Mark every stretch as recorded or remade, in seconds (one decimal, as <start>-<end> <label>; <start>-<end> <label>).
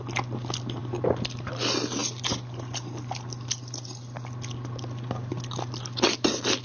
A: 0.0-6.6 remade